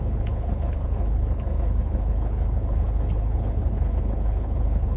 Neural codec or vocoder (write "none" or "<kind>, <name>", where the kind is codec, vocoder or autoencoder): codec, HILCodec